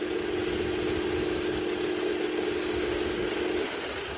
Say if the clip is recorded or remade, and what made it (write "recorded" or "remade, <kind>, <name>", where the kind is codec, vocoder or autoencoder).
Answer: recorded